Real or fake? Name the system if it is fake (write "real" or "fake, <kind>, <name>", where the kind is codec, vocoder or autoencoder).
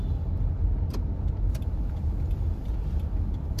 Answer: real